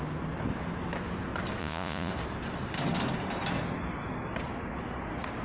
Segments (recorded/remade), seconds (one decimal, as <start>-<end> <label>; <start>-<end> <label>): 0.0-1.6 recorded; 1.6-2.1 remade; 2.1-5.4 recorded